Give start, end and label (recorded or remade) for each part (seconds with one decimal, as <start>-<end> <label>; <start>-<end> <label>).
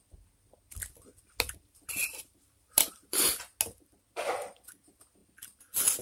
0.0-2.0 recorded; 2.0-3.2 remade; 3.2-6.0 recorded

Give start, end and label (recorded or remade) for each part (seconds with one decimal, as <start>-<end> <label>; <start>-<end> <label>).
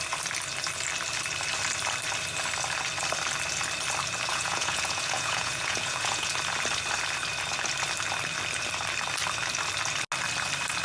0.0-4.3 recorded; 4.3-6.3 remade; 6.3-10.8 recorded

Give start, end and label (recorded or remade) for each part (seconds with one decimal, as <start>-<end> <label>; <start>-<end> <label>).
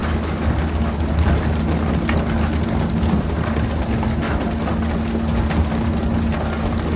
0.0-7.0 recorded